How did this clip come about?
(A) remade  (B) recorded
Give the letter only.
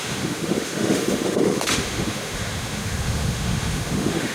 A